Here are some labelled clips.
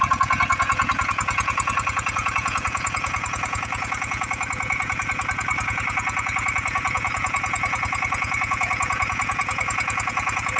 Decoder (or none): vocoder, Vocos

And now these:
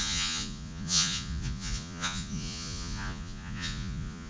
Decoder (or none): vocoder, Vocos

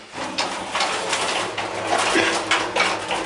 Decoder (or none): none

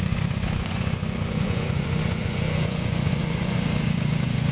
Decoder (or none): vocoder, Vocos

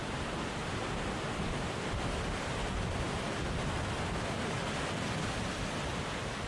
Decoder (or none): none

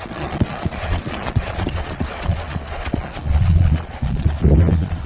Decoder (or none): vocoder, Vocos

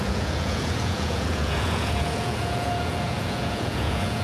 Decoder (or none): vocoder, Vocos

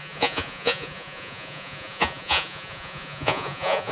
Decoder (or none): vocoder, Vocos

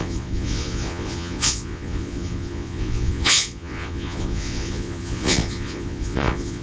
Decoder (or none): vocoder, Vocos